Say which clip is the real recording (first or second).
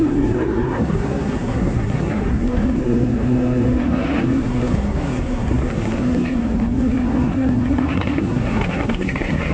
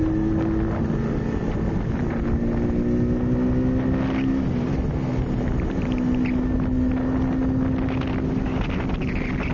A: second